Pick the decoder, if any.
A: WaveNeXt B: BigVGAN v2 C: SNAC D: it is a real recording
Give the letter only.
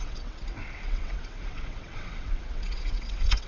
A